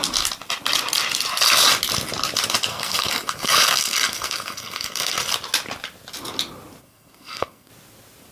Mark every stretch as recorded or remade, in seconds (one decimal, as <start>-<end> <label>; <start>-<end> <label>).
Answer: 0.0-2.7 recorded; 2.7-5.2 remade; 5.2-6.8 recorded; 6.8-7.7 remade; 7.7-8.3 recorded